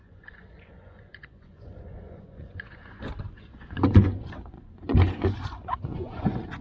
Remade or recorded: remade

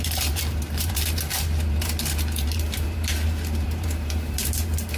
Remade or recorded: remade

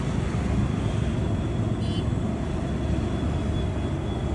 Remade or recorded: recorded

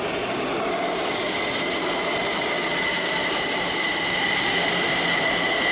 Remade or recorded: recorded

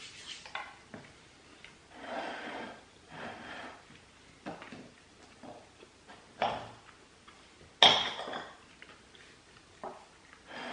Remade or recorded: recorded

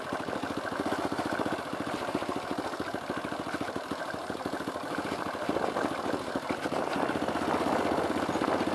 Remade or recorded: recorded